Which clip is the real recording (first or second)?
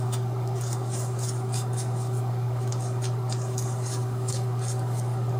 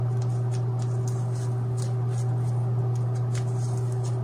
second